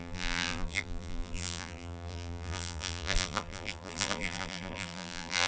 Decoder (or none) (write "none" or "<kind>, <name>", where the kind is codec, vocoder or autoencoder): vocoder, BigVGAN v2